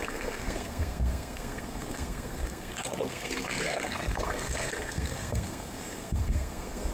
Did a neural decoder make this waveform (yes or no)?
yes